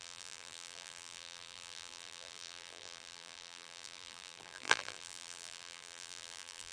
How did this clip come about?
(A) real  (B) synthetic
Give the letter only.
B